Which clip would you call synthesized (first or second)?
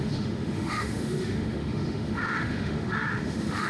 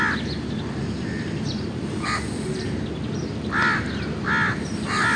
first